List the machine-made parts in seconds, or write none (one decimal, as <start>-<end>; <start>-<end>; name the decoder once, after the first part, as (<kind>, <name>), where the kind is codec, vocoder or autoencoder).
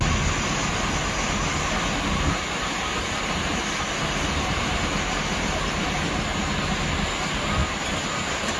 none